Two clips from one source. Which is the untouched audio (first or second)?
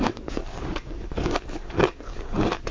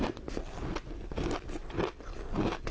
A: second